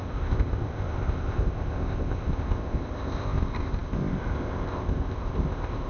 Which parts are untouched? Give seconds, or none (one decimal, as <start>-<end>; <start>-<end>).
none